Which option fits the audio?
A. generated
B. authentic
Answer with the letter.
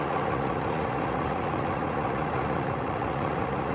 A